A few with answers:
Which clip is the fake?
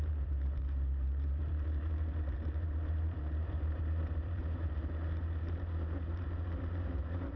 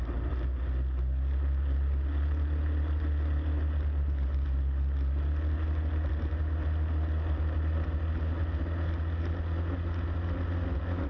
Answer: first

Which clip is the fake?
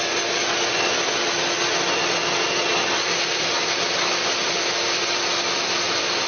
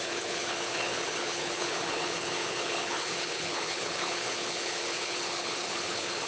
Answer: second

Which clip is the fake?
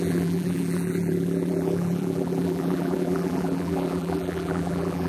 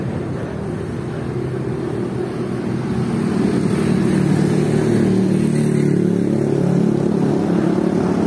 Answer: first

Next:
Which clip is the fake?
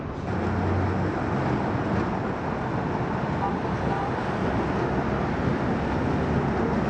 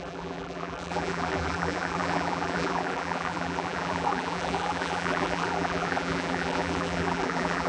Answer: second